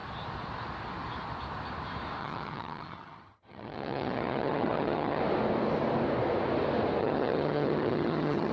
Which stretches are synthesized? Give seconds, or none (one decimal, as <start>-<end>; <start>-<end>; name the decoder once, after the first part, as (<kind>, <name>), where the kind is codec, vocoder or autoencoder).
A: 2.2-5.2 (vocoder, HiFi-GAN); 7.0-8.5